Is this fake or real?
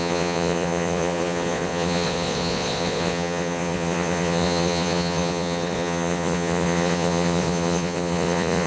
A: fake